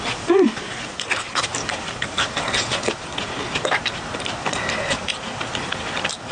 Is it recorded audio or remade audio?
recorded